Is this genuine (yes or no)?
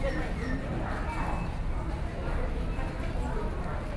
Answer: yes